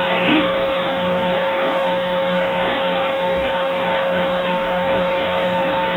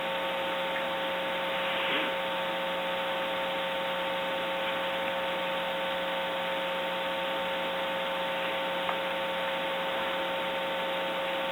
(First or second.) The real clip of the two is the second